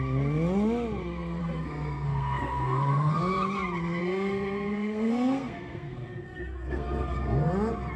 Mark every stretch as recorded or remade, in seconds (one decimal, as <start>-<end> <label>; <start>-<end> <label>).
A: 0.0-1.4 recorded; 1.4-3.2 remade; 3.2-4.0 recorded; 4.0-7.5 remade; 7.5-8.0 recorded